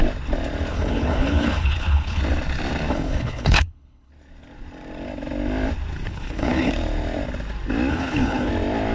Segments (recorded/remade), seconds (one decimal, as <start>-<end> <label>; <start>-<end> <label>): 0.0-0.7 recorded; 0.7-2.2 remade; 2.2-2.9 recorded; 2.9-4.1 remade; 4.1-6.1 recorded; 6.1-6.7 remade; 6.7-7.9 recorded; 7.9-8.5 remade; 8.5-8.9 recorded